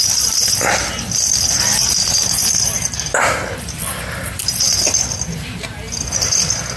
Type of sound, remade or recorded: recorded